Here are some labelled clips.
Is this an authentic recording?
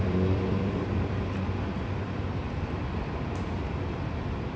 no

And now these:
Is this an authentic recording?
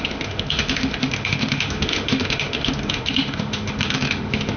no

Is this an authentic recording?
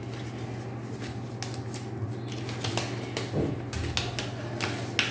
yes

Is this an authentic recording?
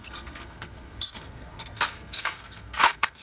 no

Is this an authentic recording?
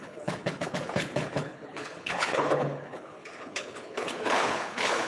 no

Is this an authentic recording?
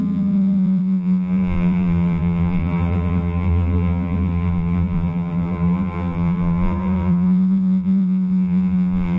no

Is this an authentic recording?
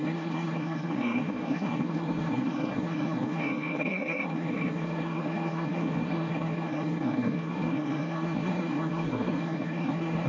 no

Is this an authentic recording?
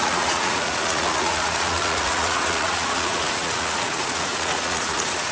no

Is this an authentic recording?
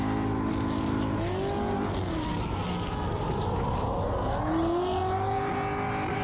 yes